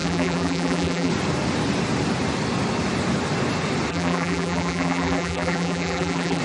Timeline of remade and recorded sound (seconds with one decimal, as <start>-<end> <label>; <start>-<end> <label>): 0.0-1.1 remade; 1.1-3.9 recorded; 3.9-6.4 remade